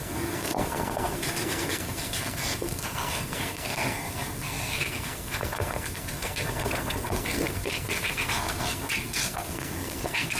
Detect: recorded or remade remade